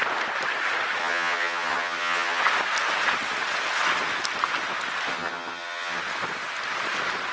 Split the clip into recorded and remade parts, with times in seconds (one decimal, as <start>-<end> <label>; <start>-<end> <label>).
0.0-1.0 recorded; 1.0-2.4 remade; 2.4-5.1 recorded; 5.1-6.0 remade; 6.0-7.3 recorded